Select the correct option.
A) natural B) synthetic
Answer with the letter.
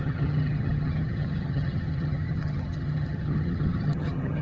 B